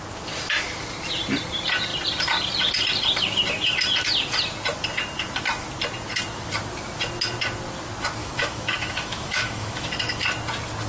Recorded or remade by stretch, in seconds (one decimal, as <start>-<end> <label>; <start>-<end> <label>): 0.0-8.2 recorded; 8.2-10.2 remade; 10.2-10.9 recorded